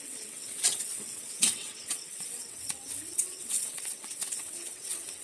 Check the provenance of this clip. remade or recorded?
remade